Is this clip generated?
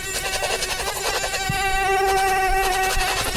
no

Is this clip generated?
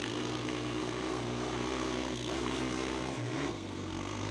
yes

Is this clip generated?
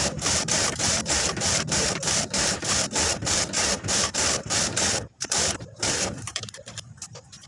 yes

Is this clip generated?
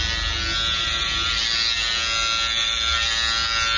no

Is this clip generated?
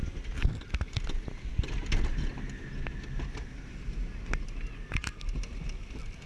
no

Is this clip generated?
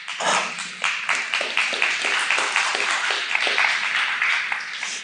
no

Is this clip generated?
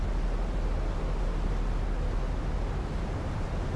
no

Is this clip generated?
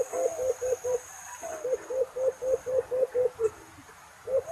no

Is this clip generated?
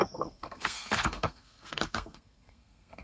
yes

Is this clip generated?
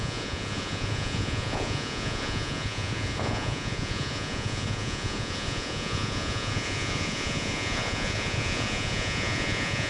yes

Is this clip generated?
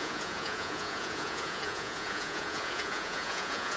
yes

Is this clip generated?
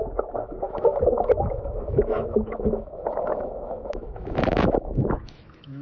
yes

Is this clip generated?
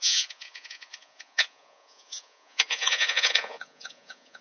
yes